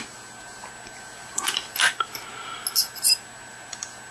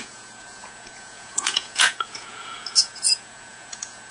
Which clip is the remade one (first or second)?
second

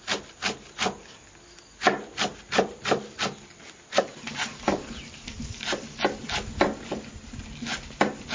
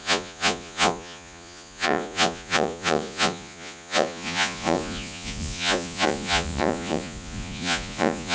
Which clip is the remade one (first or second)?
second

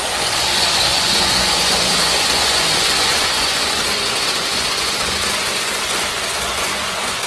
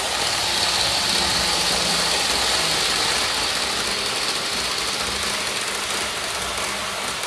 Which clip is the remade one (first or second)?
first